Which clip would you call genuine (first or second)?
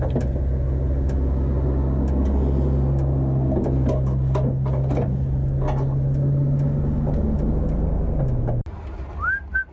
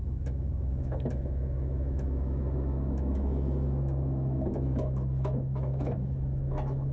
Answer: first